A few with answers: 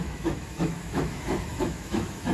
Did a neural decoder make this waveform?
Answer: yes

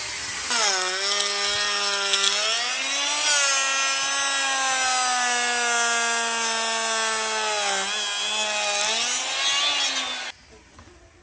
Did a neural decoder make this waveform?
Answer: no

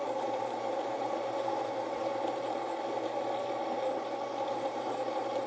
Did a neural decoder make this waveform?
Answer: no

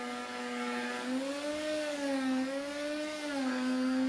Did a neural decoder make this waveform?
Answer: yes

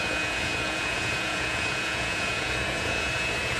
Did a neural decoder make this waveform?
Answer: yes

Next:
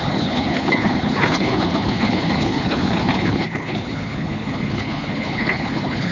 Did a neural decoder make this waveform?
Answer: yes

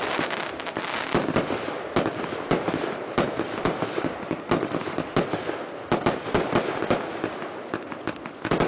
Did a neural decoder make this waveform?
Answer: no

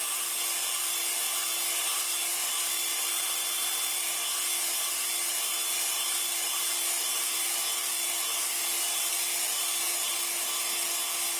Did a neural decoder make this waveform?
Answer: no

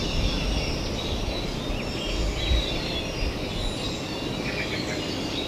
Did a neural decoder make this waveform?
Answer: no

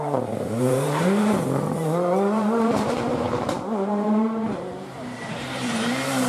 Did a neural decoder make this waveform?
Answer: yes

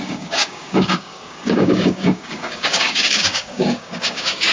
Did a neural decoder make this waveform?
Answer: yes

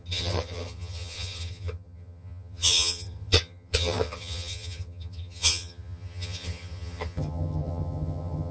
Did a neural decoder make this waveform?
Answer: yes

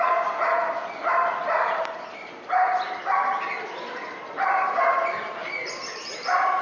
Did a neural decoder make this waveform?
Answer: no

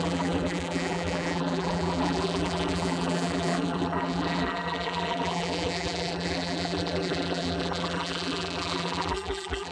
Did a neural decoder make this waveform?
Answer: yes